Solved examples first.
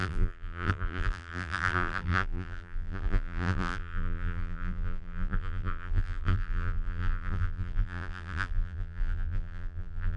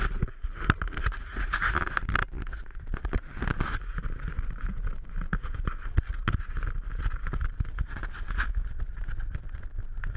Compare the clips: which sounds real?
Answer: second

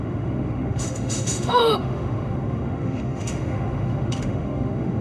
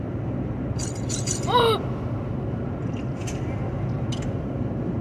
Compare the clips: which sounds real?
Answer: second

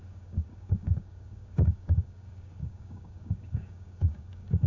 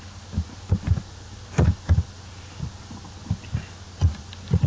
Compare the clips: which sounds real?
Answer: second